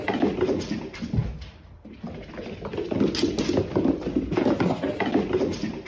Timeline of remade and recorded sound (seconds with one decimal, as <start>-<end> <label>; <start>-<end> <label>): 0.0-1.2 recorded; 1.2-1.7 remade; 1.7-5.9 recorded